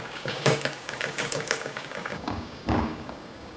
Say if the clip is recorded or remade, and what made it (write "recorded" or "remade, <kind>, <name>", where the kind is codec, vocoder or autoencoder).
remade, codec, DAC